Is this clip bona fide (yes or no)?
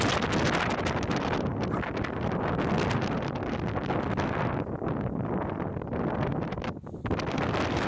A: yes